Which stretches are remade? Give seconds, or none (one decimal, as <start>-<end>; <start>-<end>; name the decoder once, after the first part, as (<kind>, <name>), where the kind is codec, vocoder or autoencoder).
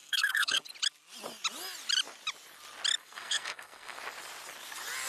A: 0.0-0.6 (codec, SNAC); 3.0-4.0